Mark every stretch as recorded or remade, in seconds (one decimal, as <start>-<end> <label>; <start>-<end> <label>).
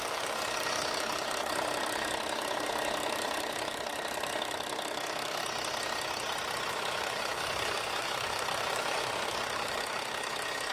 0.0-5.4 remade; 5.4-6.7 recorded; 6.7-10.7 remade